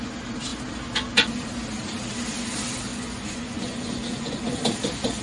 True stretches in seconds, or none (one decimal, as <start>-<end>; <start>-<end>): 0.0-2.9; 4.6-5.2

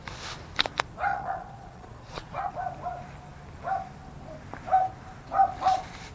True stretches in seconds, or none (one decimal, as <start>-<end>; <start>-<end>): 0.0-1.1; 2.5-6.1